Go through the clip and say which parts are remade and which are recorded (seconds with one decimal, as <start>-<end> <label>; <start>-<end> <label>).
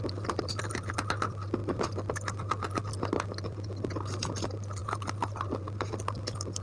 0.0-6.6 recorded